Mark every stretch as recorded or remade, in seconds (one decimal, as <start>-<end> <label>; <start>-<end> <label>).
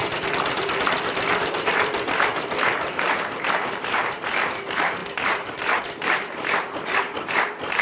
0.0-7.8 remade